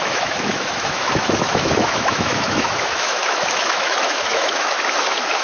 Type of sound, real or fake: fake